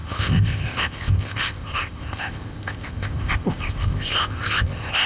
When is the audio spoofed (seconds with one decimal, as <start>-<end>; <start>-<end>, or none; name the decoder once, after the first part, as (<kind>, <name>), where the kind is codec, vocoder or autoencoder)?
0.0-5.1 (codec, ZipCodec)